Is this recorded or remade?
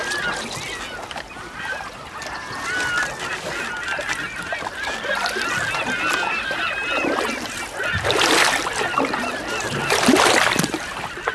recorded